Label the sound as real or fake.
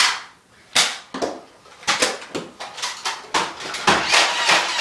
real